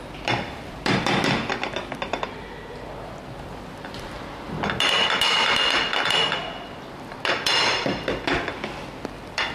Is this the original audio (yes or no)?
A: yes